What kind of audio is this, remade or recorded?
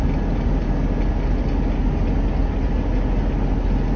recorded